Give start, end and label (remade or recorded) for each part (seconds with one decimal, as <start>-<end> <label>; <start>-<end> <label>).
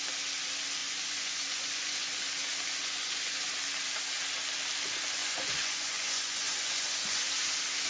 0.0-0.8 recorded; 0.8-2.3 remade; 2.3-2.8 recorded; 2.8-3.5 remade; 3.5-5.2 recorded; 5.2-7.2 remade; 7.2-7.9 recorded